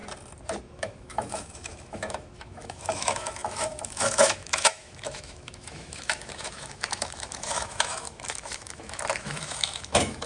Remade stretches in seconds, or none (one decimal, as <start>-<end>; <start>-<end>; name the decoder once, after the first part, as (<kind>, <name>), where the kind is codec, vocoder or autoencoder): 0.6-10.3 (autoencoder, DAC-VAE)

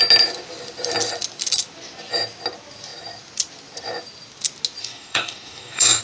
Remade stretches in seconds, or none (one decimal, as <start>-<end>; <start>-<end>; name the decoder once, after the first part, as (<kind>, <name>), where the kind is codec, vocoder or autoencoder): 4.8-6.0 (codec, DAC)

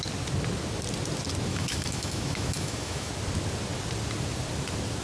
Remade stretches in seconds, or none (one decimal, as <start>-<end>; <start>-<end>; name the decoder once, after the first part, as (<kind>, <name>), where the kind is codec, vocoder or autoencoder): 1.5-3.1 (autoencoder, DAC-VAE)

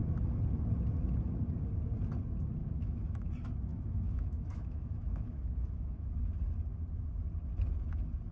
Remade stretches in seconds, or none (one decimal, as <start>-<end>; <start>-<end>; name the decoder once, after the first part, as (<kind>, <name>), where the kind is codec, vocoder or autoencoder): 2.6-3.3 (autoencoder, DAC-VAE); 3.7-6.1

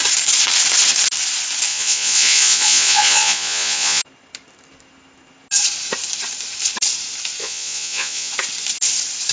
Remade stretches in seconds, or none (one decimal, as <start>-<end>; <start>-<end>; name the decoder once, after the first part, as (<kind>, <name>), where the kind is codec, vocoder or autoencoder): 1.7-4.0 (vocoder, Vocos); 7.4-8.3